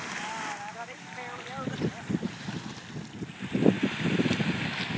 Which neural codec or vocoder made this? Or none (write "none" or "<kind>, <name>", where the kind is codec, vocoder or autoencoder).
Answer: none